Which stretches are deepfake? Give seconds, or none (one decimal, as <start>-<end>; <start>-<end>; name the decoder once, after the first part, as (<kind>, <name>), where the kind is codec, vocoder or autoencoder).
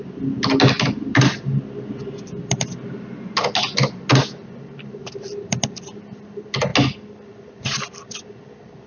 5.0-5.6 (vocoder, BigVGAN v2)